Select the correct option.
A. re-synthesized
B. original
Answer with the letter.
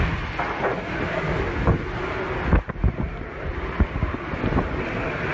B